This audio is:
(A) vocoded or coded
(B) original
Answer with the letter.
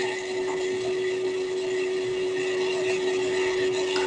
A